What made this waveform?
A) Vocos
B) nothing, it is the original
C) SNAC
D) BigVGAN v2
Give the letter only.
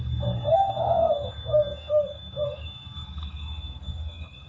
C